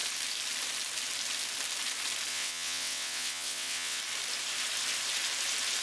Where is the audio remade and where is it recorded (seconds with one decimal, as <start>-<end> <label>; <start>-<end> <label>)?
0.0-2.3 recorded; 2.3-4.0 remade; 4.0-5.8 recorded